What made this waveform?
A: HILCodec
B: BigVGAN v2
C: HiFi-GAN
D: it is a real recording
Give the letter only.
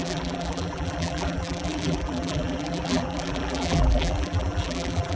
B